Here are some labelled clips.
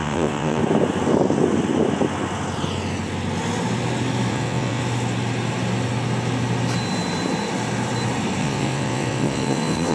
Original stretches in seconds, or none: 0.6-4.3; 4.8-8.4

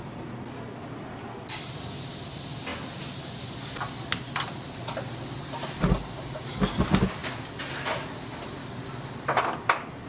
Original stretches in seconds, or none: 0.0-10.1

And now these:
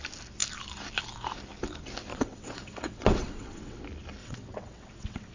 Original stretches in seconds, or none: 0.0-2.1; 3.8-4.2